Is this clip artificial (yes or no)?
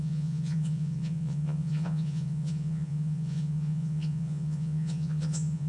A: yes